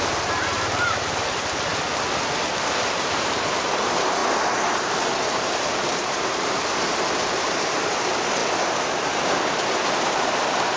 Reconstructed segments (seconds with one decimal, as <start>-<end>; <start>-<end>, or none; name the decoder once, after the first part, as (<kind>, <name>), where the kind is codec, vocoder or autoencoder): 0.0-1.7 (vocoder, BigVGAN v2); 3.0-4.2; 4.9-8.4; 9.5-10.8